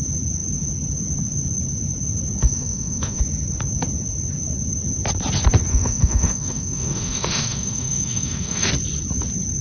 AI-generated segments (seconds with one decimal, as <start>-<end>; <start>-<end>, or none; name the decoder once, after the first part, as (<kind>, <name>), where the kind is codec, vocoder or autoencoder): 2.4-3.2 (autoencoder, DAC-VAE); 5.7-8.7